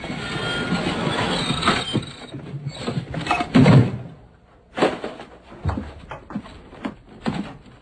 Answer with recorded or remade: recorded